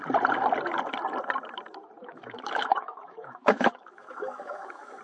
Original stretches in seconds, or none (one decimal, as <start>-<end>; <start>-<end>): 0.0-2.0